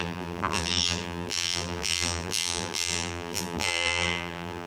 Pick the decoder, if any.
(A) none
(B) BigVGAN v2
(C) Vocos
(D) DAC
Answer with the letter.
B